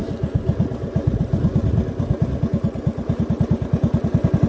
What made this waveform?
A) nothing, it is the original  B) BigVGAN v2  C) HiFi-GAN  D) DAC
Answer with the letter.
A